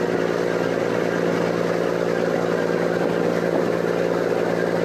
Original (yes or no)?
yes